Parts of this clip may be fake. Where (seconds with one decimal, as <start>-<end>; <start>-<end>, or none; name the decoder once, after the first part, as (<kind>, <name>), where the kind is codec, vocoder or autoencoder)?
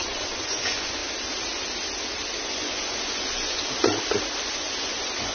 0.0-1.0 (vocoder, Vocos); 2.4-3.6; 4.5-5.3